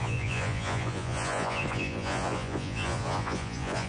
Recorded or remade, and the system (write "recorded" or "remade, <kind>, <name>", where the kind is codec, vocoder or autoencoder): remade, vocoder, Vocos